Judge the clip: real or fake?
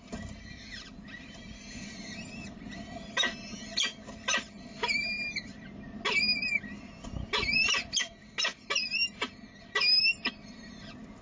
real